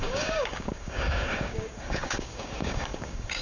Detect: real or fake fake